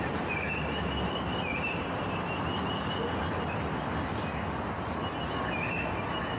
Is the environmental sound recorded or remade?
remade